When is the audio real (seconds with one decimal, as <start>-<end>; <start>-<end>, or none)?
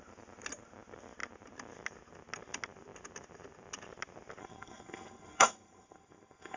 0.0-4.4